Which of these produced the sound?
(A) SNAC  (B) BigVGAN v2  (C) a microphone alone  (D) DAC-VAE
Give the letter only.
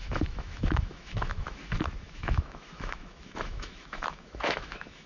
D